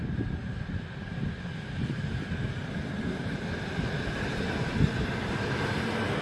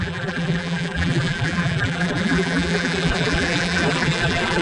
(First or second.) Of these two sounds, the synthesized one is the second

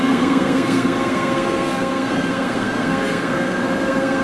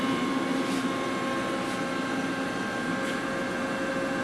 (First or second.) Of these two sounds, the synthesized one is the first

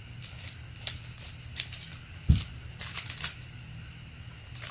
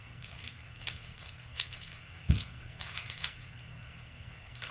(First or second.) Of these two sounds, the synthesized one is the second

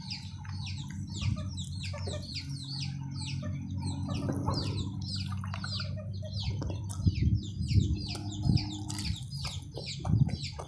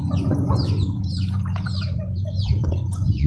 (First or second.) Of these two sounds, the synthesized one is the second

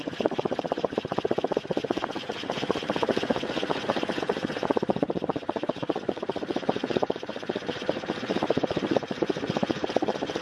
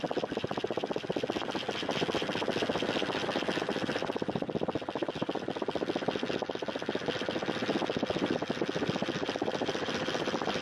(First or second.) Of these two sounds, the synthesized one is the first